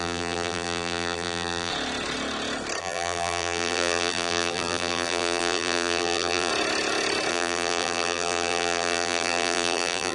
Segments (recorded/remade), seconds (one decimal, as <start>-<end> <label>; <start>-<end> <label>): 0.0-1.7 remade; 1.7-2.8 recorded; 2.8-6.5 remade; 6.5-7.3 recorded; 7.3-10.1 remade